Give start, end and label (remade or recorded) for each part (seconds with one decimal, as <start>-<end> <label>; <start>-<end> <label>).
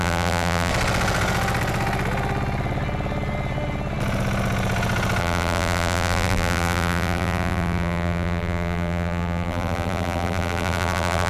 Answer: 0.0-0.7 remade; 0.7-5.2 recorded; 5.2-11.3 remade